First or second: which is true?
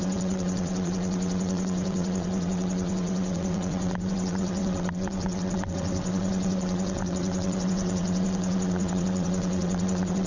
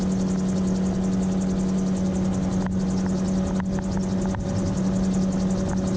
second